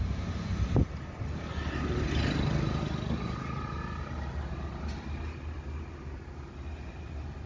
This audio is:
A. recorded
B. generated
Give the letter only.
A